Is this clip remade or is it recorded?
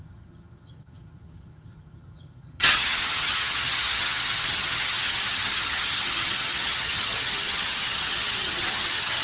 remade